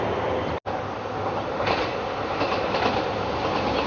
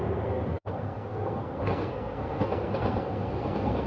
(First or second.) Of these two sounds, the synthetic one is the second